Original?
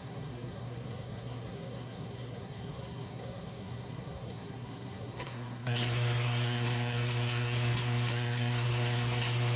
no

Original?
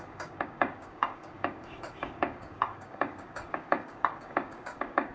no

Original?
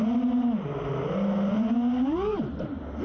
yes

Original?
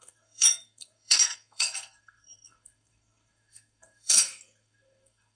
no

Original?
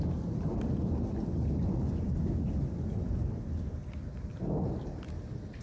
yes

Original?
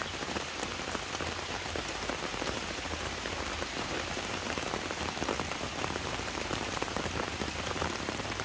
no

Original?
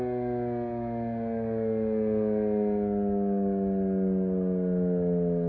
yes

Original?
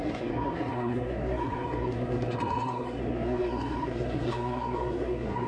no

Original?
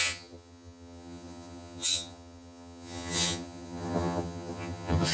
no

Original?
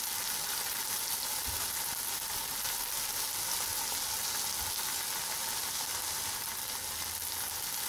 yes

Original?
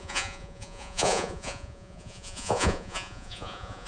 no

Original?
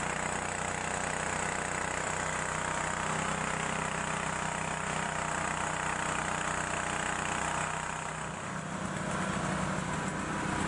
yes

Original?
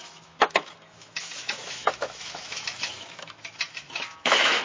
no